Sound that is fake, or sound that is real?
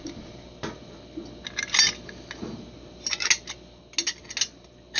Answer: real